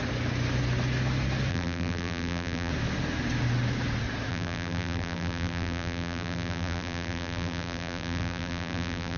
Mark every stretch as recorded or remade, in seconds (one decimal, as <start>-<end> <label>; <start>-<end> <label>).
0.0-1.5 recorded; 1.5-2.7 remade; 2.7-4.3 recorded; 4.3-9.2 remade